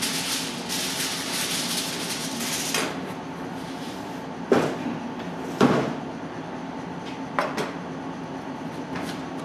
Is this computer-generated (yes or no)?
no